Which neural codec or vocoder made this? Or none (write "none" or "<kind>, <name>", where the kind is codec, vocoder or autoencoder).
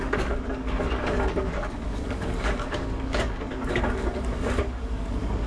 codec, DAC